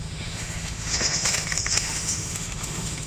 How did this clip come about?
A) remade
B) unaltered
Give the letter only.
A